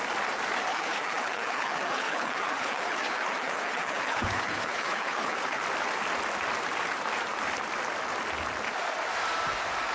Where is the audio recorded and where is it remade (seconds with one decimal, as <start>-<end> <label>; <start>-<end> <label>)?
0.0-0.7 recorded; 0.7-5.6 remade; 5.6-9.9 recorded